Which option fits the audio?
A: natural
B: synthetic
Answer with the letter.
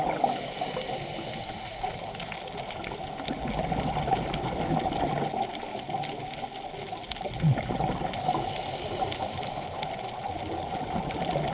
A